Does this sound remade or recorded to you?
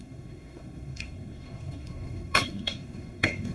remade